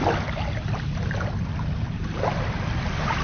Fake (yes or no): no